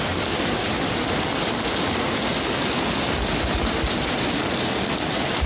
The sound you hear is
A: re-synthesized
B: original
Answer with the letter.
B